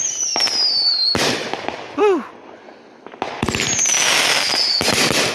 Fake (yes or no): no